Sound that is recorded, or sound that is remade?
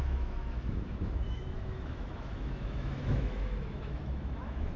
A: remade